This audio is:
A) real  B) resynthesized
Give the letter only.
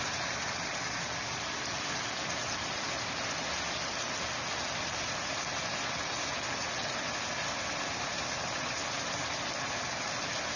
A